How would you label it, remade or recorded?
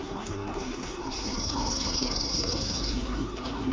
remade